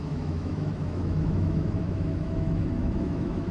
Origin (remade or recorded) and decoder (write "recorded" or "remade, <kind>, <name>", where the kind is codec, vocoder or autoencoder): remade, autoencoder, DAC-VAE